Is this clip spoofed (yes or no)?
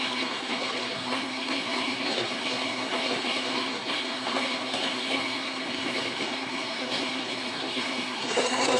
yes